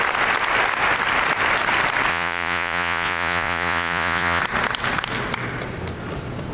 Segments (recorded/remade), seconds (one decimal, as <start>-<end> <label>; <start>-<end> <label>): 0.0-2.1 recorded; 2.1-4.4 remade; 4.4-6.5 recorded